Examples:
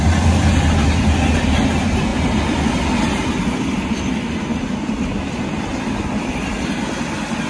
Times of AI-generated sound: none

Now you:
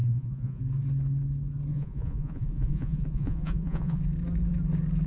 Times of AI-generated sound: 0.0-0.6; 1.7-4.0

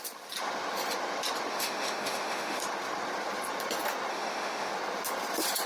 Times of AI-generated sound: 1.5-2.6; 4.1-4.7

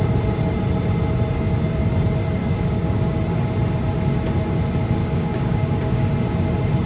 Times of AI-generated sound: 2.4-3.2; 5.0-6.1